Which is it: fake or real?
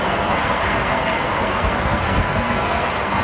fake